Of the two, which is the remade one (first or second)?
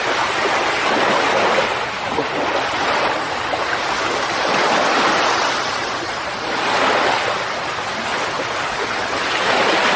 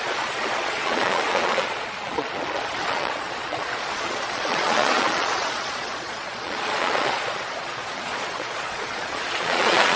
second